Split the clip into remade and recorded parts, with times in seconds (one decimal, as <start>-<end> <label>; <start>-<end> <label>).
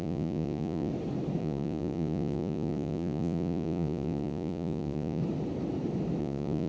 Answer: 0.0-0.9 remade; 0.9-1.4 recorded; 1.4-5.2 remade; 5.2-6.2 recorded; 6.2-6.7 remade